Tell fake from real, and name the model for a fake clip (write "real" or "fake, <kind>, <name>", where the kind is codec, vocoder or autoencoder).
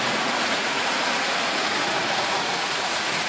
fake, vocoder, Vocos